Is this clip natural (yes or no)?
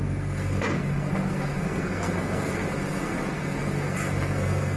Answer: no